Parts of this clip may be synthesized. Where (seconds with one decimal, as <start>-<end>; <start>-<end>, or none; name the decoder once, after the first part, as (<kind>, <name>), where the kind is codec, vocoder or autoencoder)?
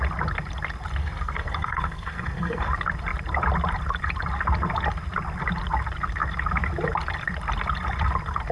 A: 1.0-2.7 (codec, SNAC)